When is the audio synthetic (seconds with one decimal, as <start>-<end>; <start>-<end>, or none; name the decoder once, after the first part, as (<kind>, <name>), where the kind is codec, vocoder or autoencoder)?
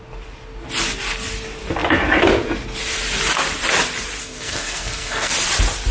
4.2-5.3 (codec, SNAC)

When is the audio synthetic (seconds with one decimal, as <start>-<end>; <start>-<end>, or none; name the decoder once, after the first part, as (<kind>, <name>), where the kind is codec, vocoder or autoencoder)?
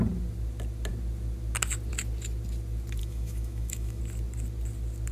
3.0-4.0 (autoencoder, DAC-VAE)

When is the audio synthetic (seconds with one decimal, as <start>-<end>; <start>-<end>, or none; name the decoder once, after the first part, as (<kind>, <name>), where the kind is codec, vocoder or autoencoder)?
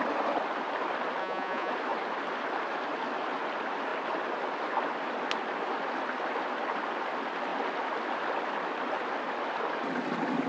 1.2-1.7 (vocoder, Vocos)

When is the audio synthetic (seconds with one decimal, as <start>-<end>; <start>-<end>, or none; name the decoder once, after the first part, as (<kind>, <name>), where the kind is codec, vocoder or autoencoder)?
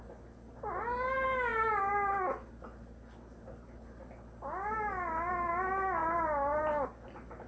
none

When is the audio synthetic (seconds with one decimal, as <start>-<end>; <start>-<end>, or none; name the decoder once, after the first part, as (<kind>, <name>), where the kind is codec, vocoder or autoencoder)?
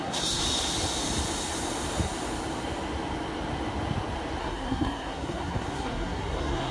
0.0-0.4 (codec, SNAC); 4.4-6.7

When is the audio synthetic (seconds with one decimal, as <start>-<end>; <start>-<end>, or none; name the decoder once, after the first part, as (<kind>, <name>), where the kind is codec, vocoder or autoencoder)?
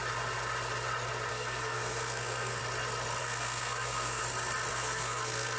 1.3-2.6 (codec, SNAC); 3.2-4.2; 4.7-5.6